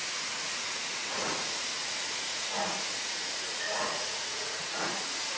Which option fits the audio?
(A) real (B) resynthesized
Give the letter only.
B